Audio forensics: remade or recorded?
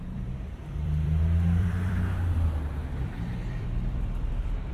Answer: remade